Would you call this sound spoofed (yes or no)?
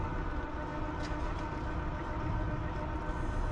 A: no